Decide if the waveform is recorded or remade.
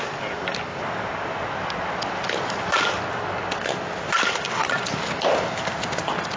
recorded